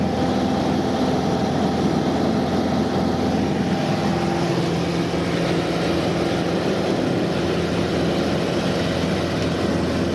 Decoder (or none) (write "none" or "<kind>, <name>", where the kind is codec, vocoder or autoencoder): none